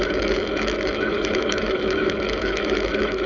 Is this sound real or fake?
fake